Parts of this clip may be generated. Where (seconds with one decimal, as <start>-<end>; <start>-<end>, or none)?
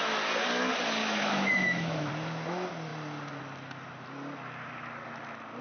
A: 1.0-2.1